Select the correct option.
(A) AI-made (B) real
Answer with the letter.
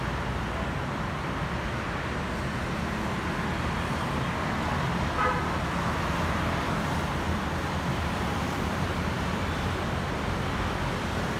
B